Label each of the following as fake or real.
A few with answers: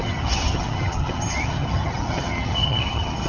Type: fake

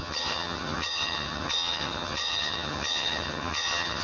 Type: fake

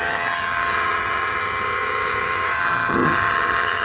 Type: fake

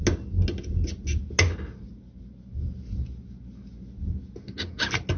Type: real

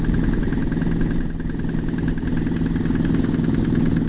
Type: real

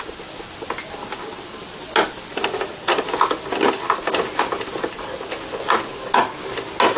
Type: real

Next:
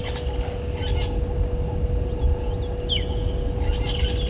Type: real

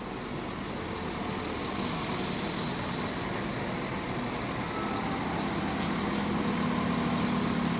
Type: real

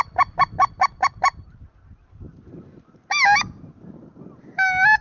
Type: real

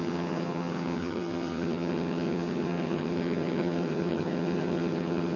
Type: fake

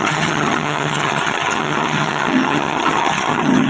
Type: fake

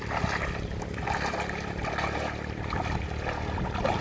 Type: real